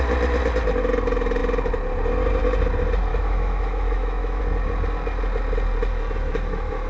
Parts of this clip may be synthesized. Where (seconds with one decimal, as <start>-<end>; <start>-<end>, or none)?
3.1-4.4; 6.3-6.9